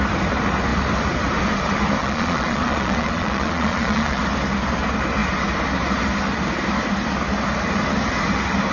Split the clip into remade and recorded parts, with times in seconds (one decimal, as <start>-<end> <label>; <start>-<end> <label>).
0.0-2.0 recorded; 2.0-4.2 remade; 4.2-8.7 recorded